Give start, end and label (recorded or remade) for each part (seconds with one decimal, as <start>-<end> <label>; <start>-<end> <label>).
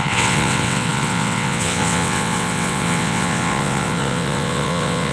0.0-5.1 remade